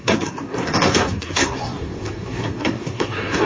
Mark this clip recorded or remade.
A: remade